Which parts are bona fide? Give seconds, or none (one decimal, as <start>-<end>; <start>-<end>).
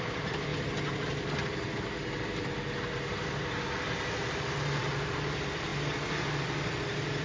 0.5-4.8; 5.7-6.4